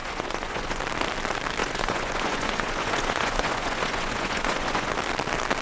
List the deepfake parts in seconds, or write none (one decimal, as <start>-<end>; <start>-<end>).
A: 0.0-0.8; 1.6-4.9